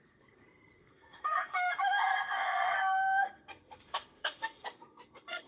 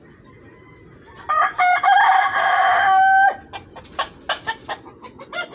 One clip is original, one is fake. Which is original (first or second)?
second